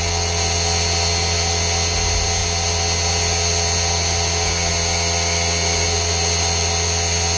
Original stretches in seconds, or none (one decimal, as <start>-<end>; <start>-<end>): 0.0-7.4